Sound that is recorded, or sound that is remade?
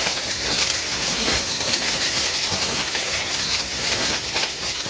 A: remade